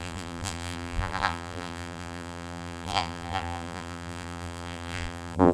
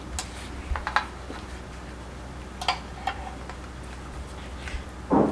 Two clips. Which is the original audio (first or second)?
second